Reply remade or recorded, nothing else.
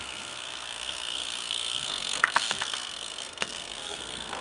remade